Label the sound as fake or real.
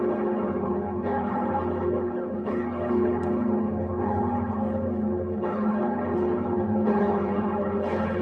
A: fake